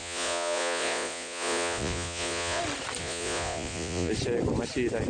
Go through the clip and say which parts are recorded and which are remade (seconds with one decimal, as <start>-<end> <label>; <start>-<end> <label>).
0.0-2.6 remade; 2.6-3.0 recorded; 3.0-4.1 remade; 4.1-5.1 recorded